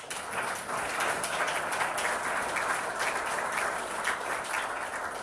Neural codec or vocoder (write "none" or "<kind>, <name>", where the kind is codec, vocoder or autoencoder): none